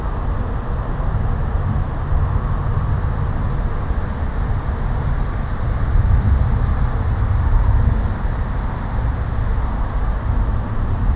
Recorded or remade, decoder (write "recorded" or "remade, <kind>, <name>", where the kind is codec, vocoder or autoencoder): recorded